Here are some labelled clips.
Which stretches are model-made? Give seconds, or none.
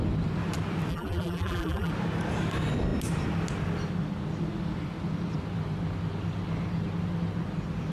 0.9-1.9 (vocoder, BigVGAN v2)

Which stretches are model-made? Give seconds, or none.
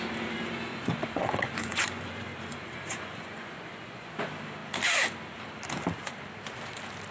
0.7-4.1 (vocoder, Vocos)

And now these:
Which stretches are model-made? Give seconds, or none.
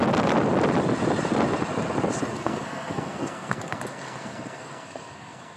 2.3-5.6 (codec, SNAC)